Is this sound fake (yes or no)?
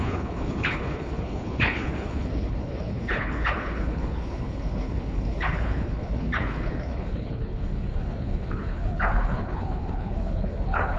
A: yes